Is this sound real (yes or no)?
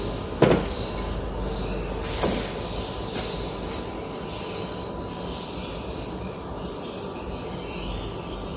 yes